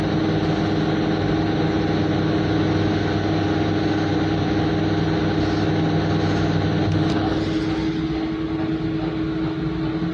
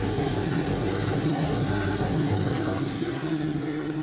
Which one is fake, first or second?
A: second